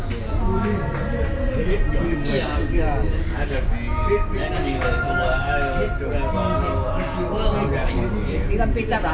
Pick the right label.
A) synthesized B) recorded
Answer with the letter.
B